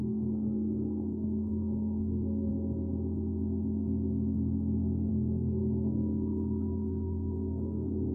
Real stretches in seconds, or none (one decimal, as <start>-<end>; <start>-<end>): 2.5-5.1